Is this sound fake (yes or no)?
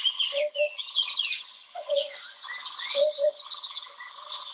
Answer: yes